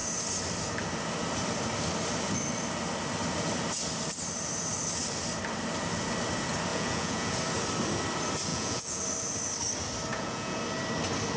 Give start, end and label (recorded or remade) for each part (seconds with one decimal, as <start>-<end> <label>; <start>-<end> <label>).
0.0-6.7 recorded; 6.7-7.4 remade; 7.4-8.5 recorded; 8.5-9.0 remade; 9.0-10.1 recorded; 10.1-10.6 remade; 10.6-11.4 recorded